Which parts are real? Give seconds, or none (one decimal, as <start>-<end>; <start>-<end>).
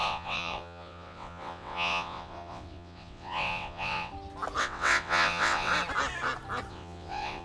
4.1-4.6; 5.7-6.7